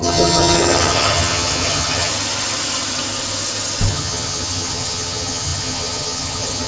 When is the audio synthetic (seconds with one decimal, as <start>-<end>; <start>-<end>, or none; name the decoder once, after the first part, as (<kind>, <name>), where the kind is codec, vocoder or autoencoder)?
0.0-2.1 (vocoder, HiFi-GAN); 3.9-6.7